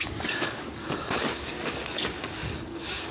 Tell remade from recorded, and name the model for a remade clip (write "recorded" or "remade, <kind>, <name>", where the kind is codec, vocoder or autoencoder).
remade, codec, DAC